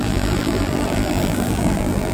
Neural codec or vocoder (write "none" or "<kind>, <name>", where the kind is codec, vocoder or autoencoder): vocoder, BigVGAN v2